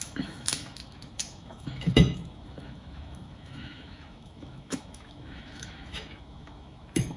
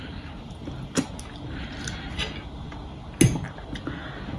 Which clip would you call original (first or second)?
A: second